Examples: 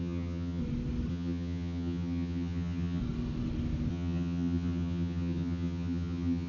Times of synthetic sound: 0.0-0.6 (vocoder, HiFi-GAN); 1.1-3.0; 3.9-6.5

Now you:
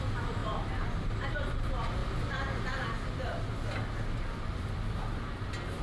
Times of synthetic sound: 0.0-0.4 (vocoder, BigVGAN v2); 1.3-2.0